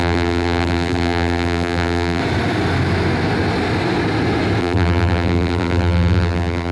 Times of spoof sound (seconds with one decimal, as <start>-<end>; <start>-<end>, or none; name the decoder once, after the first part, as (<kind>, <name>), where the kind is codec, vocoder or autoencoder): 0.0-2.2 (vocoder, BigVGAN v2); 4.6-6.7